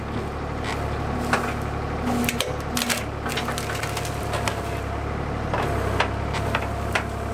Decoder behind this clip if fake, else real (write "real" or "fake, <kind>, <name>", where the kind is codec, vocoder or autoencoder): real